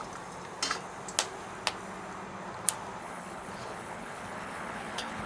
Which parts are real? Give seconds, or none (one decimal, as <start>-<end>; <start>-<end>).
0.0-3.0

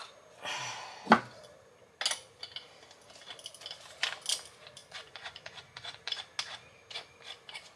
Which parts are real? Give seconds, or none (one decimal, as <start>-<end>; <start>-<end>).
0.0-4.8; 6.2-7.8

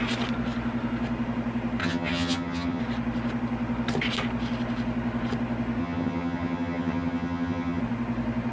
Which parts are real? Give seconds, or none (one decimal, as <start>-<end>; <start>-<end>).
0.0-1.8; 2.8-5.8; 7.8-8.5

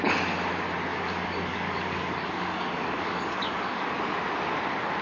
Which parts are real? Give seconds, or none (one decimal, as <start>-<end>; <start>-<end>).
0.0-0.9; 3.9-5.0